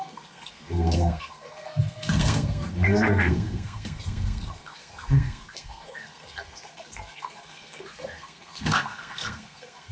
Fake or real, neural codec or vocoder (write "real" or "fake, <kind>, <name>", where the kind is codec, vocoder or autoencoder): fake, codec, SNAC